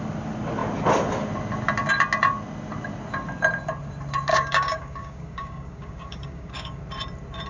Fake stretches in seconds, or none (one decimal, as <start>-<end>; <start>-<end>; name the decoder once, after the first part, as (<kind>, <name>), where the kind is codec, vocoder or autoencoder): 4.3-6.8 (codec, DAC)